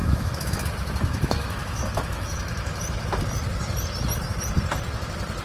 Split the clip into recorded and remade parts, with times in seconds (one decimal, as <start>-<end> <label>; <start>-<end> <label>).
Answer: 0.0-2.8 remade; 2.8-5.4 recorded